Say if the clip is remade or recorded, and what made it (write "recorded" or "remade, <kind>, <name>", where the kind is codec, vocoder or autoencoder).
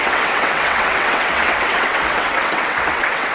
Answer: remade, vocoder, WaveNeXt